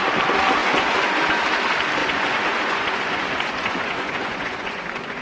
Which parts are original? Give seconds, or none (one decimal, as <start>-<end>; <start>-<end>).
0.0-0.6; 1.4-2.0